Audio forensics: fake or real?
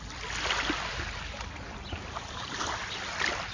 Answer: real